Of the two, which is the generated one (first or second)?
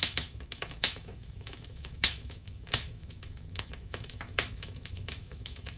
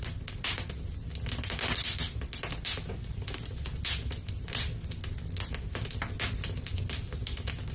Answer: first